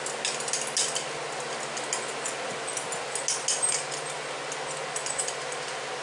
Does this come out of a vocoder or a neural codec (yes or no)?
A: no